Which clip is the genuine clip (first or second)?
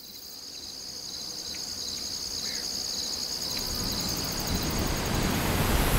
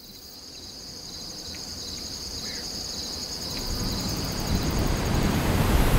first